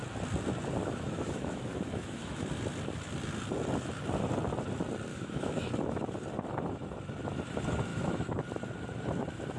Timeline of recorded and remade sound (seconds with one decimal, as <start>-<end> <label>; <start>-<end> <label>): 0.0-0.8 recorded; 0.8-2.4 remade; 2.4-5.1 recorded; 5.1-5.7 remade; 5.7-7.9 recorded; 7.9-8.4 remade; 8.4-9.6 recorded